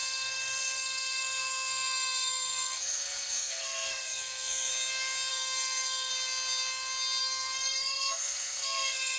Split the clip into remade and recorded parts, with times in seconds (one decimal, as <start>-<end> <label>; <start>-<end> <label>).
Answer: 0.0-4.7 remade; 4.7-5.3 recorded; 5.3-6.1 remade; 6.1-7.2 recorded; 7.2-9.2 remade